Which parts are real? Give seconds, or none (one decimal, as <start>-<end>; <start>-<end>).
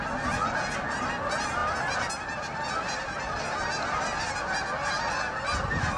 0.0-6.0